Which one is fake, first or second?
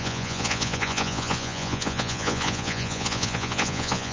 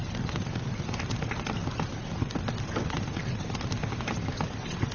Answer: first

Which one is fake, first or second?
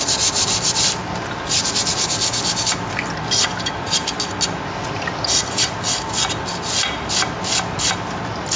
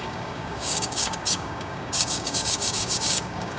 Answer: second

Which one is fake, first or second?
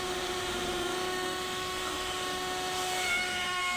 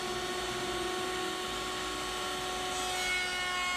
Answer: first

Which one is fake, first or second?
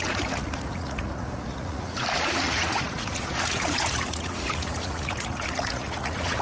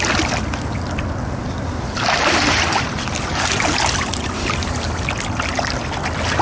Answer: first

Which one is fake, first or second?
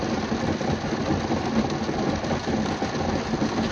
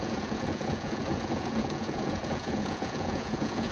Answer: second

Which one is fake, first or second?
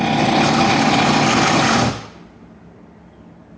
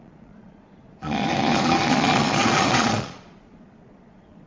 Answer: second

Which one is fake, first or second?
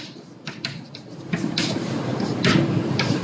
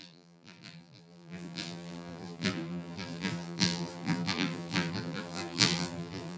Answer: second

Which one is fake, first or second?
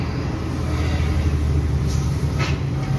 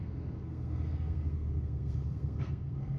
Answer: second